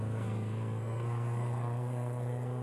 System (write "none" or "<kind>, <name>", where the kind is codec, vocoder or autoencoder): codec, SNAC